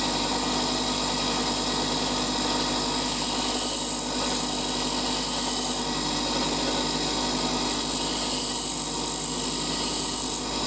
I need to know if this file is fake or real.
real